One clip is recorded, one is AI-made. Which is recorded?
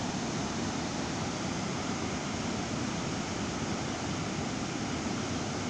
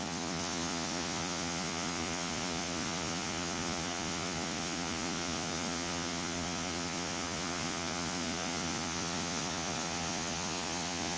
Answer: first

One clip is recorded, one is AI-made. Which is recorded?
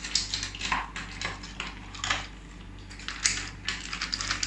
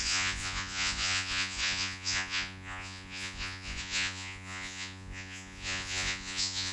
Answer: first